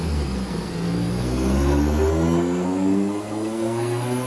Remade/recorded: remade